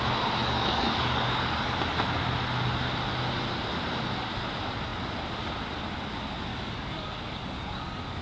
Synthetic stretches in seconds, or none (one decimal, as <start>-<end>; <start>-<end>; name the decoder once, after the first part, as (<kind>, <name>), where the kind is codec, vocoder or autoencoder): 0.4-1.7 (codec, DAC); 6.5-8.2